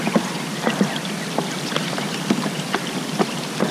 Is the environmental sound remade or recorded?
recorded